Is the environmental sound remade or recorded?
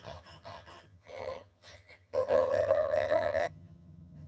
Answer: remade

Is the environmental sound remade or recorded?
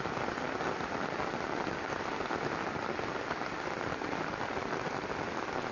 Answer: recorded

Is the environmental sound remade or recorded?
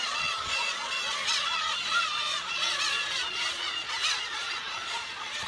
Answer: remade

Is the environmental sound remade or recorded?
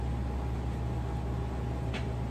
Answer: recorded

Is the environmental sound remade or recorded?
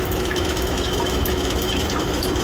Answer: remade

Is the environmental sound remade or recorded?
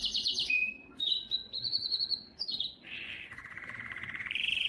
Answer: remade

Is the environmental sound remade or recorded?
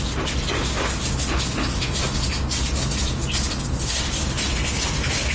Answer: recorded